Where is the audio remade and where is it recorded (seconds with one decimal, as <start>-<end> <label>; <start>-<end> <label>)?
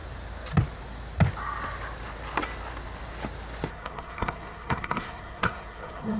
0.0-3.7 recorded; 3.7-6.2 remade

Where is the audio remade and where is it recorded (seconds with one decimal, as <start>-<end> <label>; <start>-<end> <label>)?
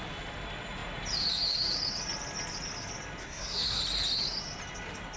0.0-3.2 recorded; 3.2-3.8 remade; 3.8-5.2 recorded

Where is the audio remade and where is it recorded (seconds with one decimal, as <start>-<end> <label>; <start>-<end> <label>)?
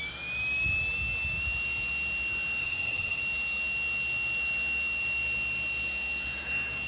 0.0-2.6 recorded; 2.6-3.2 remade; 3.2-6.9 recorded